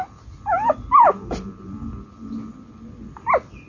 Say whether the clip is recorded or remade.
recorded